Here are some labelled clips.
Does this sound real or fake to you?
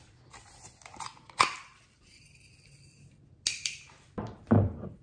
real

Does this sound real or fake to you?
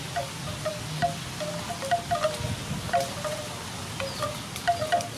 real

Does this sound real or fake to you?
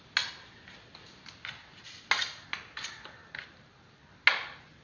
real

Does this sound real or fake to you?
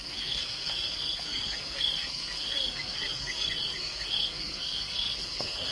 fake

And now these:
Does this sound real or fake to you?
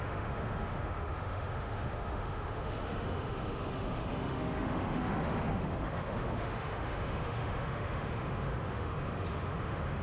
fake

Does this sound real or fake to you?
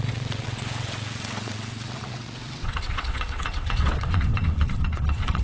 fake